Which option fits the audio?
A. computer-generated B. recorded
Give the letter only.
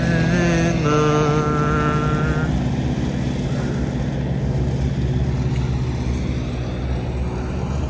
B